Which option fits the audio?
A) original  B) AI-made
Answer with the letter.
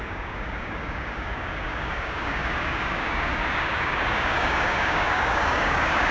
B